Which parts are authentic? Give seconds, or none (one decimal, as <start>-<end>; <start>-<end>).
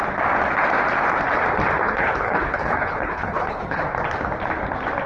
0.0-1.8; 3.8-5.1